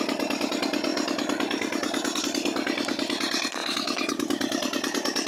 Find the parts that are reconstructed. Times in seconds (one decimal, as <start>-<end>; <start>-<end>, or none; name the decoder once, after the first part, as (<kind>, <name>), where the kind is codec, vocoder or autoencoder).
none